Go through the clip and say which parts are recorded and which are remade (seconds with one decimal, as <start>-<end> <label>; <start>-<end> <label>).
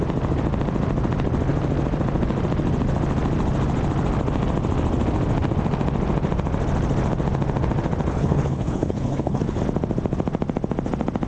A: 0.0-8.1 recorded; 8.1-9.6 remade; 9.6-11.3 recorded